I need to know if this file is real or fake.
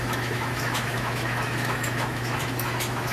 fake